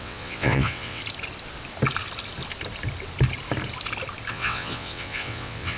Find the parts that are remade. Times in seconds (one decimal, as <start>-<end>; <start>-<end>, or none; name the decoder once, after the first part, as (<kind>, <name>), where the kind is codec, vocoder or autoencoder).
0.0-1.0 (vocoder, WaveNeXt); 4.3-5.8